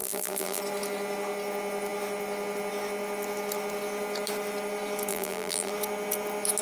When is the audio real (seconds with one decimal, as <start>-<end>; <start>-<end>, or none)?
0.6-5.1; 5.7-6.6